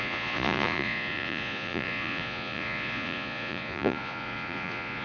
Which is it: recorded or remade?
remade